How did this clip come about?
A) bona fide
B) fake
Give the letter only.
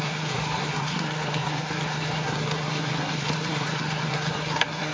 B